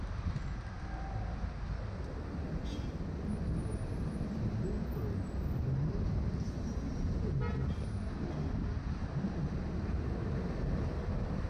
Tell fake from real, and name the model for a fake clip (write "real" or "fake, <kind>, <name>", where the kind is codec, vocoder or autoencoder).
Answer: real